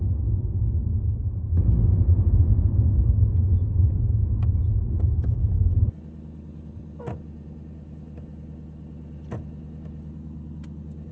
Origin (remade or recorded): recorded